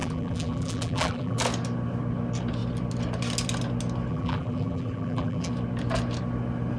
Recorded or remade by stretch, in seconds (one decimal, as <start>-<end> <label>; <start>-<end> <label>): 0.0-1.4 remade; 1.4-4.1 recorded; 4.1-5.5 remade; 5.5-6.8 recorded